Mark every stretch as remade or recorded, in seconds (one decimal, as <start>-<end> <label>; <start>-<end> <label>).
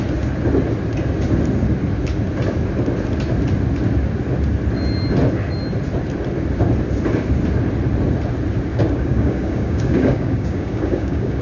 0.0-8.7 recorded; 8.7-11.4 remade